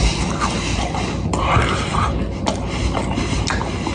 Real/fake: real